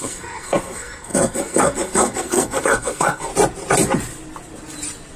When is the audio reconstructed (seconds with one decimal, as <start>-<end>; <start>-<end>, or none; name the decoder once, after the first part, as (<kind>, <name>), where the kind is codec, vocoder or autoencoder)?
0.0-3.3 (codec, SNAC)